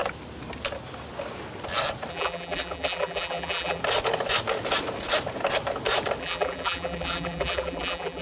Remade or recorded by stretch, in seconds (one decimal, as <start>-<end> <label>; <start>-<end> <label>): 0.0-2.1 recorded; 2.1-3.8 remade; 3.8-6.2 recorded; 6.2-8.2 remade